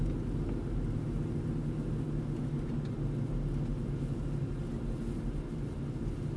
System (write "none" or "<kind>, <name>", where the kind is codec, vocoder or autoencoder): none